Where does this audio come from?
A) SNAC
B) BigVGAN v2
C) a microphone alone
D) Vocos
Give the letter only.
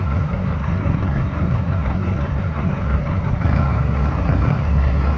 A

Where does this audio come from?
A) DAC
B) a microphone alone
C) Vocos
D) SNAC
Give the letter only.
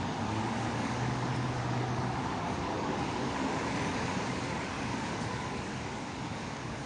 A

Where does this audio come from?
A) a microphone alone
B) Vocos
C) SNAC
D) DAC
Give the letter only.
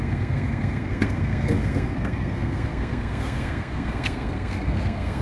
C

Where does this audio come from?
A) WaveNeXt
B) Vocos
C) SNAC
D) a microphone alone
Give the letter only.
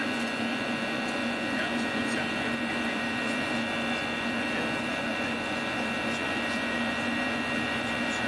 B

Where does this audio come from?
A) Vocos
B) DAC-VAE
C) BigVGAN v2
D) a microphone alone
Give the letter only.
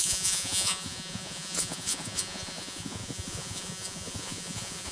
A